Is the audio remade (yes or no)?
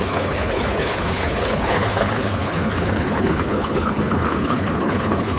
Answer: yes